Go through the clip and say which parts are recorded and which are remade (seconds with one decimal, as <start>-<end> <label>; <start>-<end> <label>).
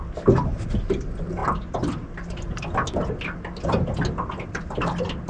0.0-5.3 recorded